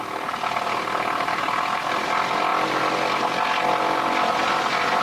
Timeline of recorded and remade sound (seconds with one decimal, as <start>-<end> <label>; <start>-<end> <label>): 0.0-5.0 recorded